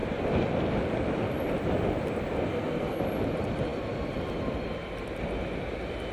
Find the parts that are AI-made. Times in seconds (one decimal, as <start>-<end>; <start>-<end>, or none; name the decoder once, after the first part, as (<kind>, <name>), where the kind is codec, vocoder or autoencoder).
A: 2.5-3.0 (codec, SNAC)